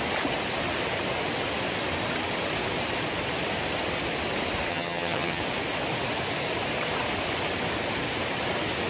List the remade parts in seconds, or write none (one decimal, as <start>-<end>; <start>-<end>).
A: 4.7-5.4